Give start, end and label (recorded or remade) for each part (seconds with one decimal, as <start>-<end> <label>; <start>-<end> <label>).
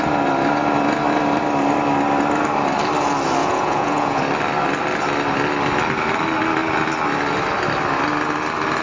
0.0-3.4 recorded; 3.4-4.2 remade; 4.2-8.8 recorded